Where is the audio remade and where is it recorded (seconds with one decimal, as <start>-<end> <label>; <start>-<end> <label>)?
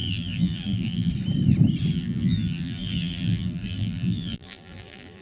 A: 0.0-1.1 remade; 1.1-1.9 recorded; 1.9-5.2 remade